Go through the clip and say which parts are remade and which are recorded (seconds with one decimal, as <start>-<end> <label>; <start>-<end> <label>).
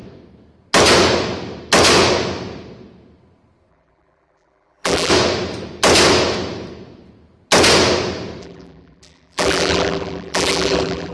0.0-3.7 recorded; 3.7-5.1 remade; 5.1-8.4 recorded; 8.4-11.1 remade